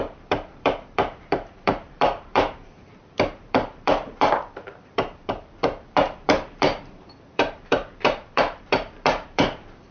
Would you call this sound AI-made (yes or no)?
yes